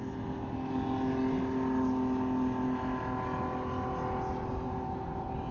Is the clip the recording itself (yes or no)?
yes